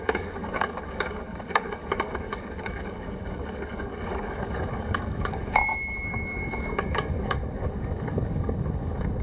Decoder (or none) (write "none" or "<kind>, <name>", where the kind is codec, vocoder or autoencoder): codec, DAC